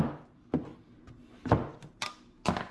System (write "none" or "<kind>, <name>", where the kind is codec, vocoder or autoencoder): none